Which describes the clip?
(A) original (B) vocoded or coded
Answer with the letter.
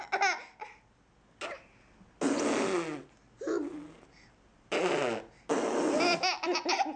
A